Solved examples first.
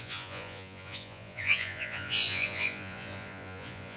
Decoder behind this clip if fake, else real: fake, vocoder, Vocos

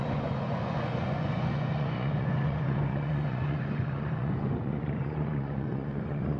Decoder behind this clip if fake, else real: fake, vocoder, Vocos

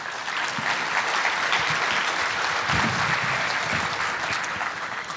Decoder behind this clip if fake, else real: real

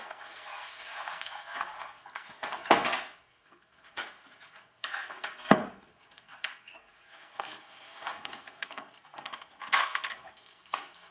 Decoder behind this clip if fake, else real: fake, codec, SNAC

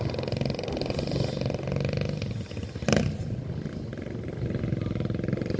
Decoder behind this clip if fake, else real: real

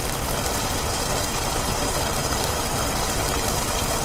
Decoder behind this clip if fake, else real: real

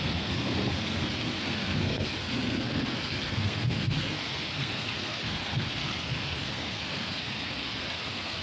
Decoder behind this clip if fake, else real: fake, codec, SNAC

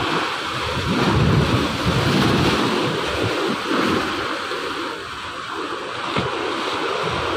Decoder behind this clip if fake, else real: real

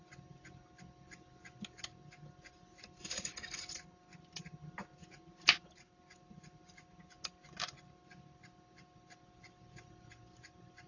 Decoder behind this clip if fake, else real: real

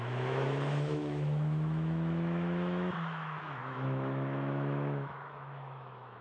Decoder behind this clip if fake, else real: fake, autoencoder, DAC-VAE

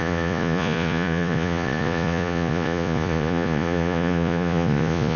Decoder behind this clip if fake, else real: fake, vocoder, Vocos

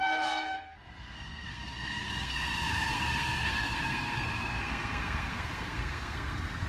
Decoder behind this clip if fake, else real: fake, codec, SNAC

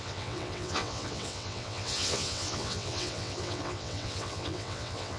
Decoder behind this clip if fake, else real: fake, vocoder, WaveNeXt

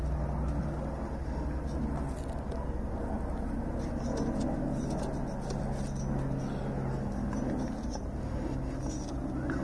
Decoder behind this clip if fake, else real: real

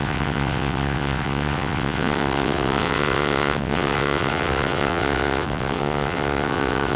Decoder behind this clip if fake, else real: fake, vocoder, WaveNeXt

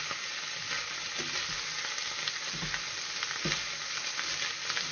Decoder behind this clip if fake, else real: real